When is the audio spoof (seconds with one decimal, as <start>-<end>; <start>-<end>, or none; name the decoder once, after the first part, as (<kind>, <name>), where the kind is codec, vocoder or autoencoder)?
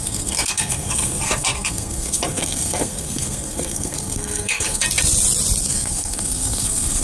0.0-4.8 (codec, SNAC); 5.6-7.0